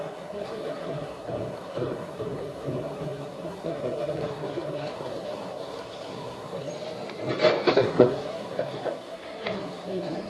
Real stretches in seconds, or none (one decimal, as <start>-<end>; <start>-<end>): 6.7-7.7